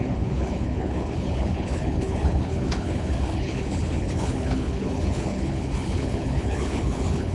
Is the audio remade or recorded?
remade